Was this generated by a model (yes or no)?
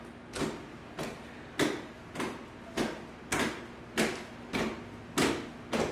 no